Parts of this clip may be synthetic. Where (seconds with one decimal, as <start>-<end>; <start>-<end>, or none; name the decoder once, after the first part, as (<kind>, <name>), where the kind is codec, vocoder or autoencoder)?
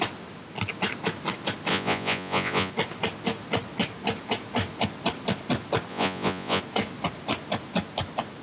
1.7-2.7 (vocoder, Vocos); 5.9-6.6